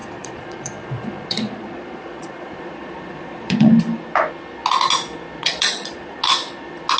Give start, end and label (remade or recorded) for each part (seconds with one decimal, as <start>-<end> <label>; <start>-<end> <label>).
0.0-3.7 remade; 3.7-5.4 recorded; 5.4-6.2 remade; 6.2-7.0 recorded